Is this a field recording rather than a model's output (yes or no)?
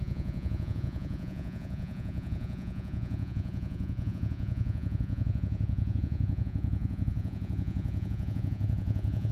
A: no